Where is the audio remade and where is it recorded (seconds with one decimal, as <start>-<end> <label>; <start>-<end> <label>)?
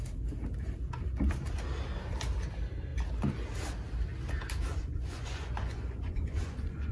0.0-4.7 recorded; 4.7-6.9 remade